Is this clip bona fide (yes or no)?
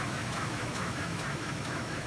no